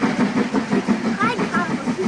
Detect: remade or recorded recorded